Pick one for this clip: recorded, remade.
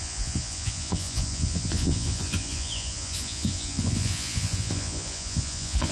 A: remade